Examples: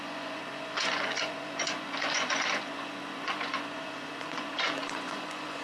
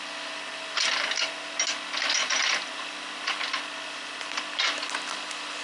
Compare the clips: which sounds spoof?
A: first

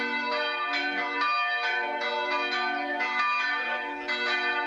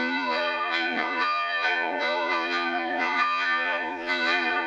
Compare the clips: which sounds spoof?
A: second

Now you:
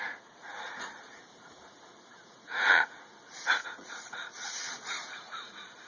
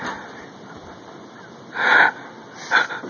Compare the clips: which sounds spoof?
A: first